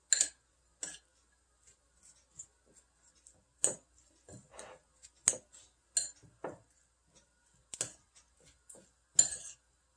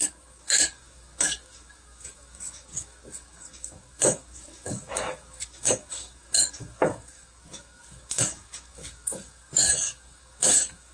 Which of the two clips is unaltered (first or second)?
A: first